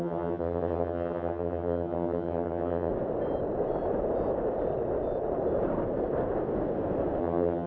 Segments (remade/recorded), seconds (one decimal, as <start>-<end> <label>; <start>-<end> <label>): 0.0-2.9 remade; 2.9-7.2 recorded; 7.2-7.7 remade